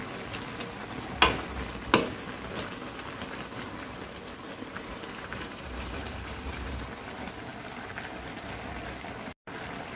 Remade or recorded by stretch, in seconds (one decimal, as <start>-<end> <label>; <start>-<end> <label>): 0.0-5.3 recorded; 5.3-6.8 remade; 6.8-10.0 recorded